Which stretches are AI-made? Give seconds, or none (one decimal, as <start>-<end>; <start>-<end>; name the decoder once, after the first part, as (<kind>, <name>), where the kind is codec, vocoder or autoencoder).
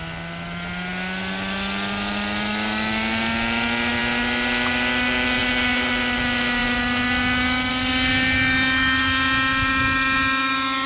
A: none